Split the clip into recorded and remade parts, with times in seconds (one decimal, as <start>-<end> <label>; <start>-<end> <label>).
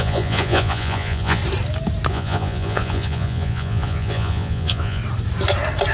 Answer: 0.0-1.4 remade; 1.4-2.1 recorded; 2.1-5.0 remade; 5.0-5.9 recorded